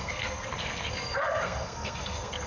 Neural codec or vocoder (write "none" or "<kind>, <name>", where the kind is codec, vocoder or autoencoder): codec, SNAC